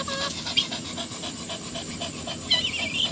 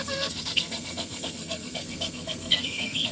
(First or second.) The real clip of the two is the first